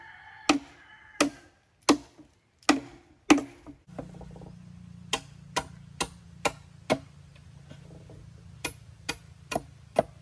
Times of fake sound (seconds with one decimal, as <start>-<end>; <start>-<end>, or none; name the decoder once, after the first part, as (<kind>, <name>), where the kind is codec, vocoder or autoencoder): none